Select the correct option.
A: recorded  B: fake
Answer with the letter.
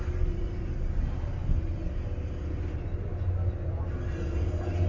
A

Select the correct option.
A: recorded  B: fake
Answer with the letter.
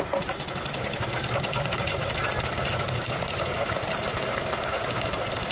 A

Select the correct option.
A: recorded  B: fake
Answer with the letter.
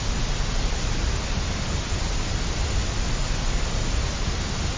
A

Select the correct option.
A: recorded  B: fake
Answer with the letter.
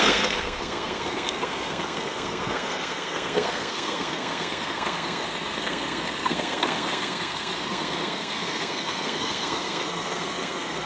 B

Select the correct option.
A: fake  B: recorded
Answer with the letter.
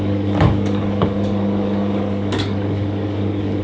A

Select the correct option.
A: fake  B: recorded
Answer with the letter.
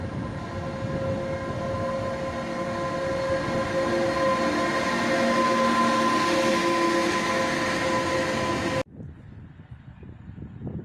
B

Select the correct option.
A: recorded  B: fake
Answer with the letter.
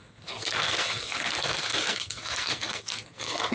B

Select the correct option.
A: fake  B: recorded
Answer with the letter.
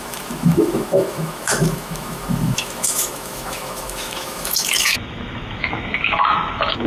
A